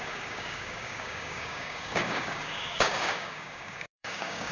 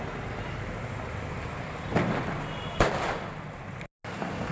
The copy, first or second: first